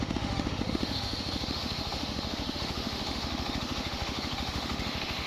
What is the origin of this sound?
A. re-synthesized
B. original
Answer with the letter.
A